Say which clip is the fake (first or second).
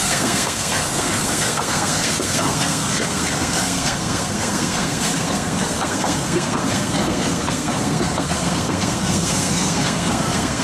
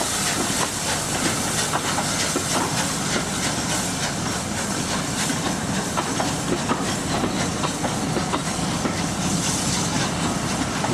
first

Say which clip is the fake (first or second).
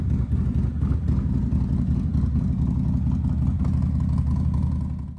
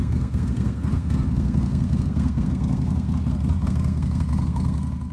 second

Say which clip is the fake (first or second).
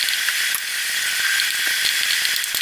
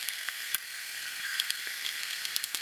second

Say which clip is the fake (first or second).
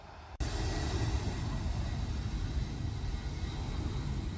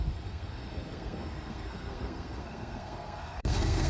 second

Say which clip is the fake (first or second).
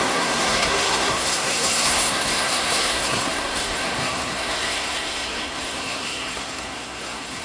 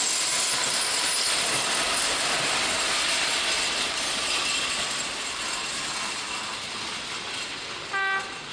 first